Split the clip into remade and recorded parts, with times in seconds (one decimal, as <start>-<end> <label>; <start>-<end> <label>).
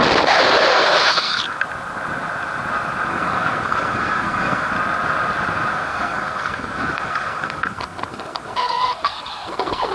0.0-0.7 recorded; 0.7-1.6 remade; 1.6-3.1 recorded; 3.1-4.7 remade; 4.7-5.7 recorded; 5.7-9.9 remade